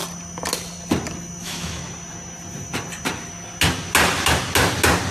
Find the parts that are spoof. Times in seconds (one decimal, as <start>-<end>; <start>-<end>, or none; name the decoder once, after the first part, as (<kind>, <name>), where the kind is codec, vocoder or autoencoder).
1.4-1.8 (autoencoder, DAC-VAE)